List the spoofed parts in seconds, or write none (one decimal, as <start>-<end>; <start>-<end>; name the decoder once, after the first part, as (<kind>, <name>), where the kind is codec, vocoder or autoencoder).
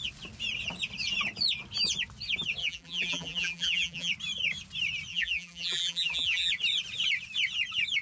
2.6-4.1 (vocoder, BigVGAN v2); 5.1-6.5